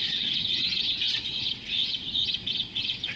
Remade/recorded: remade